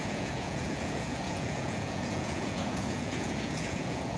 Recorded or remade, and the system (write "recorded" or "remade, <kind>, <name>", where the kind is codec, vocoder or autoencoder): remade, vocoder, Vocos